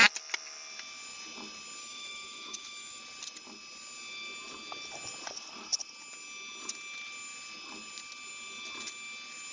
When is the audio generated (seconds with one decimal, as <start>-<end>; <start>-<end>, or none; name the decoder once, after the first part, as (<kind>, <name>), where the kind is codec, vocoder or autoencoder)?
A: 1.8-3.0 (autoencoder, DAC-VAE)